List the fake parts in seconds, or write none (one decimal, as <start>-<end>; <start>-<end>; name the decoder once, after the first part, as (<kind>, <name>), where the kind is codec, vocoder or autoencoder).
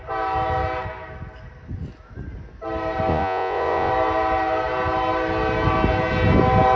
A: 3.1-3.9 (vocoder, Vocos)